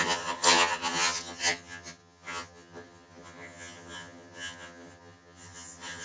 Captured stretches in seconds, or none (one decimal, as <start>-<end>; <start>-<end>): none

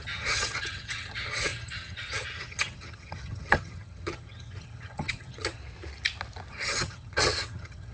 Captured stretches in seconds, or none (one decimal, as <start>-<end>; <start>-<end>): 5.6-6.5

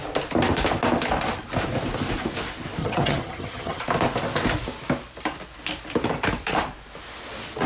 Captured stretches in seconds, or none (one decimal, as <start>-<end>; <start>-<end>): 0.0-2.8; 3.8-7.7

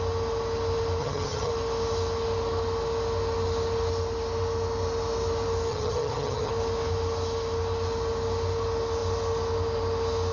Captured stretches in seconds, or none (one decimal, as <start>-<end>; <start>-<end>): 0.0-1.0; 1.5-5.7; 6.5-10.3